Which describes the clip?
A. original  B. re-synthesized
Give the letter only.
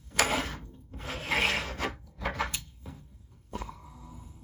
B